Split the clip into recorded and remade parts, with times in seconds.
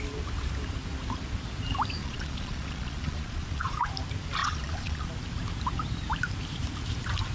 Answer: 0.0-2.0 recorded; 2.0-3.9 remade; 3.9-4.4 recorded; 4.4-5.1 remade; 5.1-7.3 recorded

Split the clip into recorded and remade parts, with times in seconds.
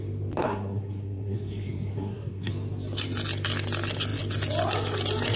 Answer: 0.0-0.4 recorded; 0.4-2.5 remade; 2.5-5.4 recorded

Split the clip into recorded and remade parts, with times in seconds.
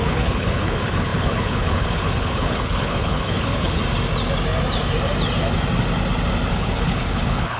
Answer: 0.0-3.8 remade; 3.8-6.5 recorded; 6.5-7.6 remade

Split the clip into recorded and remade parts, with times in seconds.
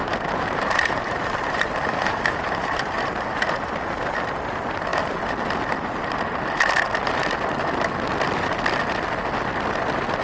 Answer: 0.0-3.4 remade; 3.4-10.2 recorded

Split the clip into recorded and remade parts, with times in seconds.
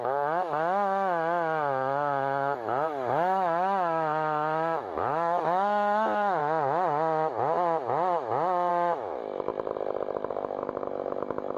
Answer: 0.0-6.4 remade; 6.4-8.7 recorded; 8.7-9.5 remade; 9.5-10.3 recorded; 10.3-11.6 remade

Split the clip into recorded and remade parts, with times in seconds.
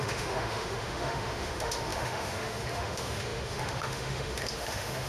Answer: 0.0-5.1 remade